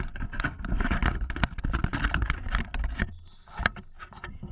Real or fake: real